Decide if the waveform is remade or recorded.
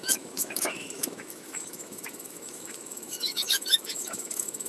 remade